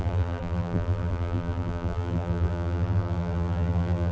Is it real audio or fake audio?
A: fake